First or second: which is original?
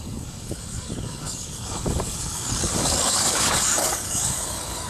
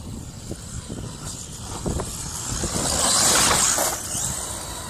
second